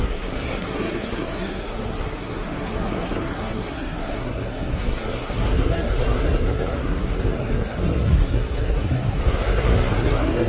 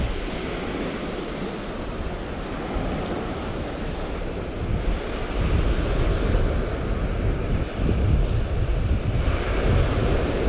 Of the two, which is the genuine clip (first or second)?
second